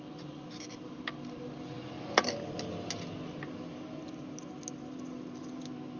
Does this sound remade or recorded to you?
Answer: recorded